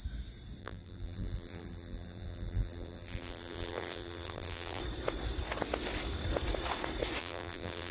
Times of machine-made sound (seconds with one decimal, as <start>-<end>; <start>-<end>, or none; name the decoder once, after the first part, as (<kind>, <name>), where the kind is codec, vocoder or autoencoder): 0.6-4.8 (vocoder, BigVGAN v2); 7.2-7.9